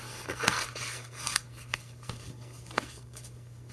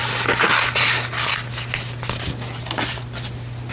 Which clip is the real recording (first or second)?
second